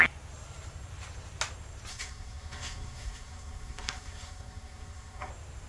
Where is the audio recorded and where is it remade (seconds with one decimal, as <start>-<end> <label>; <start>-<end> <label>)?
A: 0.0-1.9 recorded; 1.9-5.3 remade; 5.3-5.7 recorded